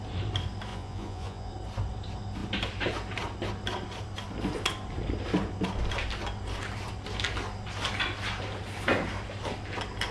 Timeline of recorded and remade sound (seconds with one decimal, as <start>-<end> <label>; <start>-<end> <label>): 0.0-0.7 recorded; 0.7-1.5 remade; 1.5-10.1 recorded